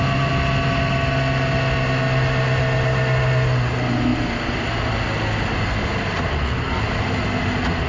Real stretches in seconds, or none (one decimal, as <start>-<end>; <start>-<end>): 0.0-7.9